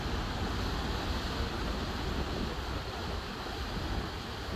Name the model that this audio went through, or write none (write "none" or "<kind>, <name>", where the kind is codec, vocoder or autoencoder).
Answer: none